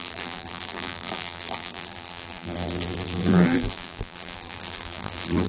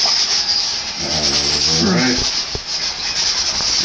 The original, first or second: second